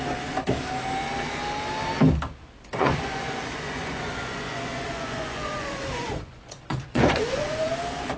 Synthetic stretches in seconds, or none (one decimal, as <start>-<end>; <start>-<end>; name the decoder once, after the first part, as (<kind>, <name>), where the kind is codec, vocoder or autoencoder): 2.8-7.7 (vocoder, Vocos)